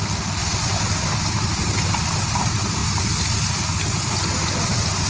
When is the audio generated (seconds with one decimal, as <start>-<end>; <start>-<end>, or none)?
none